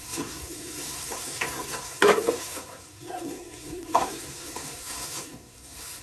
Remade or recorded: remade